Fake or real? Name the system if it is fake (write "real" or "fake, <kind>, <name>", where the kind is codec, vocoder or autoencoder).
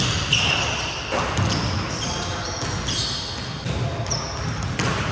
real